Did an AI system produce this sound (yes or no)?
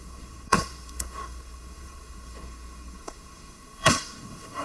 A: yes